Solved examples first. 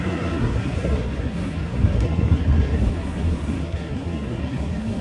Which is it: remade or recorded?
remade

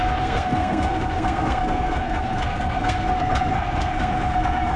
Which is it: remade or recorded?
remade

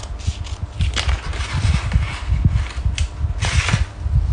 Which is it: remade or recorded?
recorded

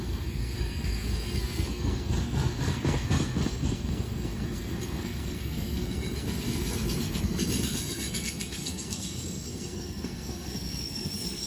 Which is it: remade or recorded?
remade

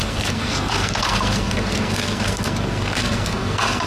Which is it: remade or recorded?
remade